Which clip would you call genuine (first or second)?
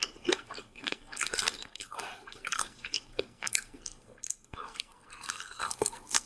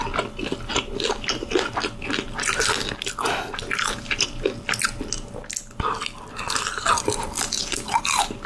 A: second